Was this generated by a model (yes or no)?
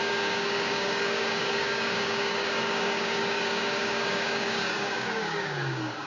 yes